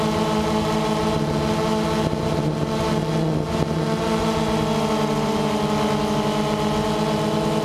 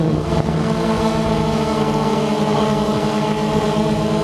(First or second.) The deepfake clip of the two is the second